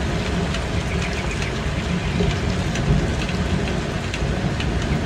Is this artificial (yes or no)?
no